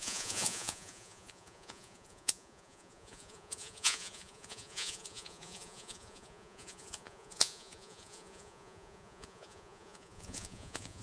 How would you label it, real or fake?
fake